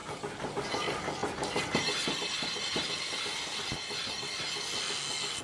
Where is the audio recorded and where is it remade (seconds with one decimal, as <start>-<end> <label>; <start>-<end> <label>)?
0.0-0.7 remade; 0.7-1.2 recorded; 1.2-3.6 remade; 3.6-5.4 recorded

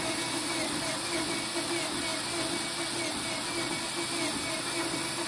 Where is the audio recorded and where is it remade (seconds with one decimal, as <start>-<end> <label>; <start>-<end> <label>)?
0.0-5.3 recorded

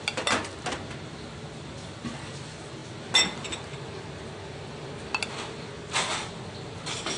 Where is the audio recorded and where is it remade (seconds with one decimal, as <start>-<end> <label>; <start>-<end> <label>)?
0.0-7.2 recorded

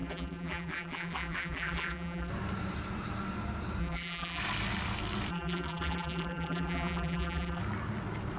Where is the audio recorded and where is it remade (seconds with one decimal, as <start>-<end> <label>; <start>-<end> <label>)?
0.0-2.3 remade; 2.3-3.8 recorded; 3.8-4.4 remade; 4.4-5.3 recorded; 5.3-7.6 remade; 7.6-8.4 recorded

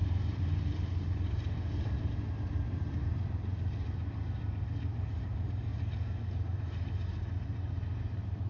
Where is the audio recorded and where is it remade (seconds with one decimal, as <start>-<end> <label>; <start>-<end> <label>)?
0.0-5.7 remade; 5.7-6.3 recorded; 6.3-8.5 remade

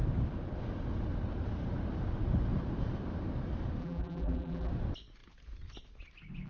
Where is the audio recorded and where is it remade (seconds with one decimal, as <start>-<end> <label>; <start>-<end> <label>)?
0.0-3.8 recorded; 3.8-4.7 remade; 4.7-6.5 recorded